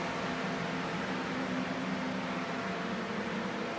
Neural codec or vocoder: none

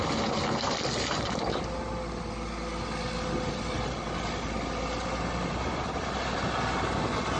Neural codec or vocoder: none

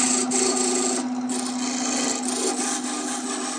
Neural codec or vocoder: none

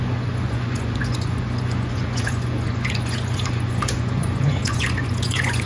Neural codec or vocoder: vocoder, Vocos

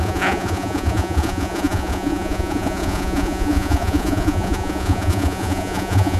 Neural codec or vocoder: vocoder, Vocos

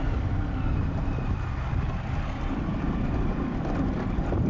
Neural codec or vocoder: none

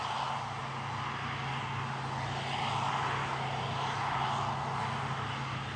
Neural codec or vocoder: none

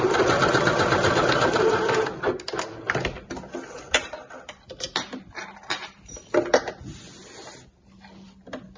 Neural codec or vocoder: none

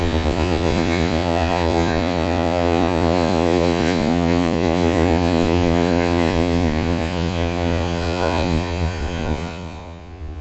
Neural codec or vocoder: vocoder, Vocos